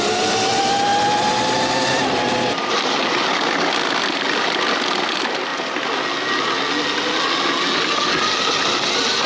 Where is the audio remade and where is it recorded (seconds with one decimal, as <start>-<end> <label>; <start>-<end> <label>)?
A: 0.0-9.3 recorded

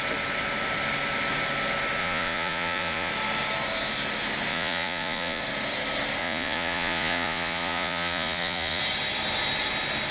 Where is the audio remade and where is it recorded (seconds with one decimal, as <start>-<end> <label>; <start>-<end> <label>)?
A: 0.0-2.0 recorded; 2.0-3.1 remade; 3.1-4.5 recorded; 4.5-5.4 remade; 5.4-6.2 recorded; 6.2-8.8 remade; 8.8-10.1 recorded

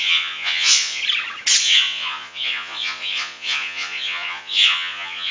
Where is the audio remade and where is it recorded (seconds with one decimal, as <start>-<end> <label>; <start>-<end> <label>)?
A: 0.0-1.0 remade; 1.0-1.6 recorded; 1.6-5.3 remade

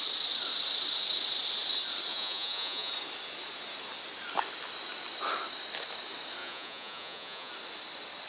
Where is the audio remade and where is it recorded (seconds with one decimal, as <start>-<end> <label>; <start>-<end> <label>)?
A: 0.0-2.1 recorded; 2.1-2.9 remade; 2.9-6.4 recorded; 6.4-7.5 remade; 7.5-8.3 recorded